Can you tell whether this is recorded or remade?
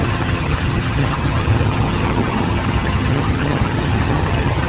remade